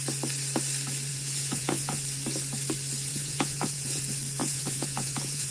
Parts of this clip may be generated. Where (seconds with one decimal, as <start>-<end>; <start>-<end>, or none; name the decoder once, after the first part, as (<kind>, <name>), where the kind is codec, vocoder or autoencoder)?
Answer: 1.1-2.0 (vocoder, Vocos); 3.1-4.0; 4.4-5.5

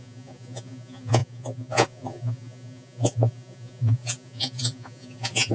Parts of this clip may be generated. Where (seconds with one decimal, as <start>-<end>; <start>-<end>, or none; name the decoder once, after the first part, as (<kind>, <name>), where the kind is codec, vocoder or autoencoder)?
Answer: 0.0-5.5 (vocoder, Vocos)

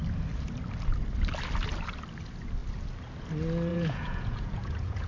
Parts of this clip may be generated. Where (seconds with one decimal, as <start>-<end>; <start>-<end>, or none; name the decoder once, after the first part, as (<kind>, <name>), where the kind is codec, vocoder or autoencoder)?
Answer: 3.7-5.1 (vocoder, Vocos)

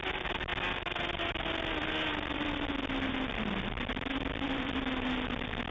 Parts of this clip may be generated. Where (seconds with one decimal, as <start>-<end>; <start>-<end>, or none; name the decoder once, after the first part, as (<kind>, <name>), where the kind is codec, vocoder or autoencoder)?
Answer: 2.1-2.7 (vocoder, BigVGAN v2); 3.1-4.8

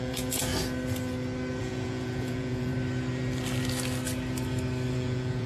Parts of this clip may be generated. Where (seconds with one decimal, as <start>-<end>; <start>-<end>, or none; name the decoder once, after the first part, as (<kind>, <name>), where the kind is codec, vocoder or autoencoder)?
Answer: 0.0-0.5 (vocoder, Vocos); 1.6-2.7; 4.9-5.5